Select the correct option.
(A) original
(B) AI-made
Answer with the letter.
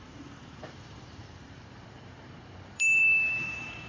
B